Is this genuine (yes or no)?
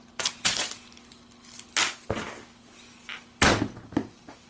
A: yes